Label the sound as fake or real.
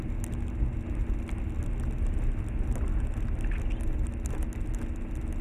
real